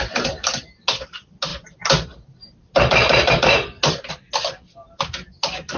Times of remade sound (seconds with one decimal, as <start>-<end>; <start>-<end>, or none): none

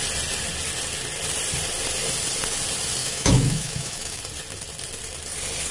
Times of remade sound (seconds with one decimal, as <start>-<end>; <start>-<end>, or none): 3.0-4.2

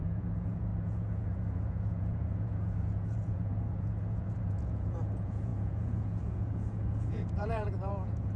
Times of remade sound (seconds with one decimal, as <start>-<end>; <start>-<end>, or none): 0.0-8.4

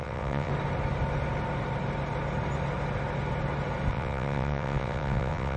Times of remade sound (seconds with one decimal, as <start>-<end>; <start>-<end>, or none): 0.0-0.5; 3.9-5.6

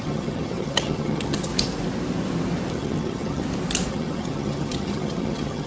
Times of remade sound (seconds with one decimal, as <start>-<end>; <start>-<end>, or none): 0.0-1.5; 2.7-3.4; 3.9-5.7